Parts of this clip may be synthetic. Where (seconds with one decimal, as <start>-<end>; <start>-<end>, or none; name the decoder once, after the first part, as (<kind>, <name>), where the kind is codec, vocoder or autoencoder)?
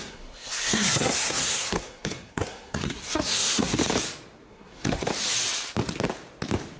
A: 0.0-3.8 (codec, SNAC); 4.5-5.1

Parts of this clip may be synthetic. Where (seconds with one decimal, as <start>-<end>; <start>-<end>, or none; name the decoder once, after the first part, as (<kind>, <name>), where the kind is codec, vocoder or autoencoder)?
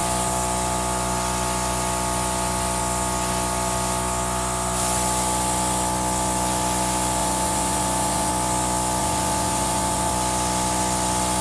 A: 7.2-8.3 (vocoder, Vocos); 9.0-10.1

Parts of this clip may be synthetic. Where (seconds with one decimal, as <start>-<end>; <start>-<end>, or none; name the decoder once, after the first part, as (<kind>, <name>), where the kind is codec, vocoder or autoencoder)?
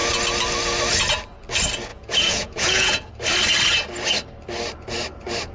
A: 1.9-3.1 (vocoder, Vocos)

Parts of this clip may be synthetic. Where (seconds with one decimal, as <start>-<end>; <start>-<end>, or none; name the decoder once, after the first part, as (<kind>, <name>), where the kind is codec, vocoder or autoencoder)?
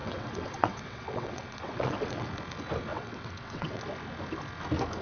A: 0.0-2.3 (vocoder, WaveNeXt); 2.9-3.8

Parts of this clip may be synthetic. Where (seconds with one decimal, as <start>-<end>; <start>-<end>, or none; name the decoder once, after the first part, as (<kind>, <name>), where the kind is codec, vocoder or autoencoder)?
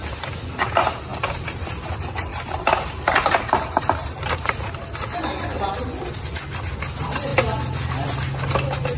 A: 1.1-1.9 (vocoder, BigVGAN v2); 2.3-4.6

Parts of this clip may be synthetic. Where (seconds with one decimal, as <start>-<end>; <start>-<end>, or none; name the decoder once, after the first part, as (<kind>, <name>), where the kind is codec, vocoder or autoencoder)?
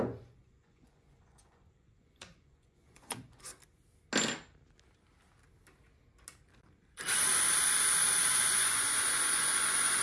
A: 0.0-3.5 (vocoder, Vocos); 8.3-10.0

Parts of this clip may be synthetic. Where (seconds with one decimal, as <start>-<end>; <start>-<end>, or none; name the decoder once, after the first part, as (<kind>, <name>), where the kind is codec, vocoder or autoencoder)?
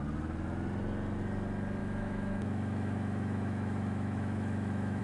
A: 1.8-5.0 (autoencoder, DAC-VAE)